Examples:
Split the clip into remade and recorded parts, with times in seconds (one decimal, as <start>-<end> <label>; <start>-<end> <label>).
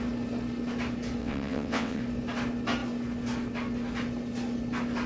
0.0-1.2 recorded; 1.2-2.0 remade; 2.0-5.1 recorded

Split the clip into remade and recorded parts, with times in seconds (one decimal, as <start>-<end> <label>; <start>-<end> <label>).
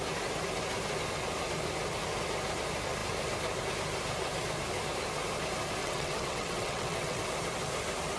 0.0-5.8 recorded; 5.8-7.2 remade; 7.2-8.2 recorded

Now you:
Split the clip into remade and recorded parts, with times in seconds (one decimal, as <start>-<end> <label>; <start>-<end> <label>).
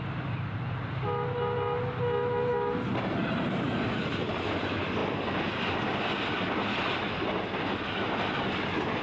0.0-9.0 recorded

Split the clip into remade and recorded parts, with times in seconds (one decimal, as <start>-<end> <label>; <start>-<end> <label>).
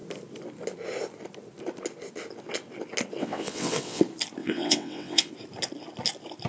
0.0-3.2 recorded; 3.2-4.0 remade; 4.0-4.4 recorded; 4.4-5.3 remade; 5.3-6.5 recorded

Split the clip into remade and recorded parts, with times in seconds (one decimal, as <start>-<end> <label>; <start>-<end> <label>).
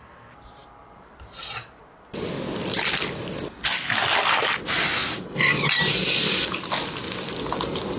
0.0-8.0 recorded